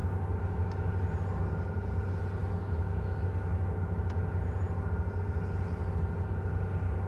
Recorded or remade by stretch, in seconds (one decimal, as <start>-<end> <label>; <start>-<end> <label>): 0.0-0.9 remade; 0.9-2.4 recorded; 2.4-4.1 remade; 4.1-7.1 recorded